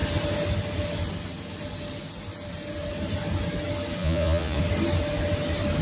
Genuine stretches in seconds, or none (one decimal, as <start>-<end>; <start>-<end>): 0.0-4.0; 4.6-5.8